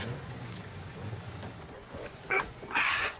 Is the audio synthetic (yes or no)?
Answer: yes